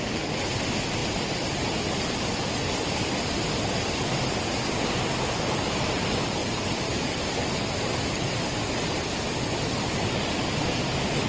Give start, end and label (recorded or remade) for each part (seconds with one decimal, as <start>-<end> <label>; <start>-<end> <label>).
0.0-11.3 recorded